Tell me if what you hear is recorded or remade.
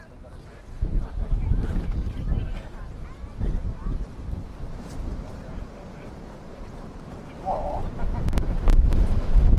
remade